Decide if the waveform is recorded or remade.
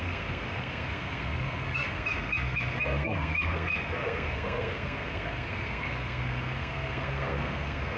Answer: remade